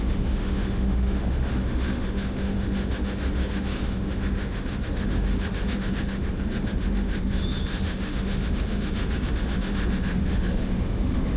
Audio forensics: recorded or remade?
remade